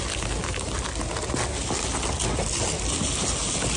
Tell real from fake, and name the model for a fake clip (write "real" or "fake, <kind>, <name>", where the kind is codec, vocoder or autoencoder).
real